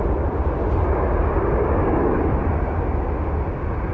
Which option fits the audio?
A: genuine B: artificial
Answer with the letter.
A